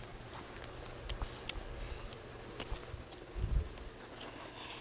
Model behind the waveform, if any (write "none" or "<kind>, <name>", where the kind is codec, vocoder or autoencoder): none